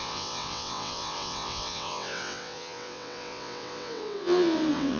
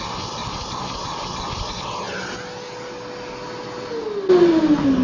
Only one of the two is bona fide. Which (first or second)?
second